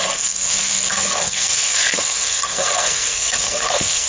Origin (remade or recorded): remade